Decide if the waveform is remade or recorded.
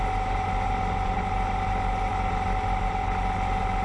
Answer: recorded